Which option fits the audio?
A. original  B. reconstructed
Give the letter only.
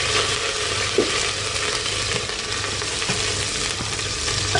A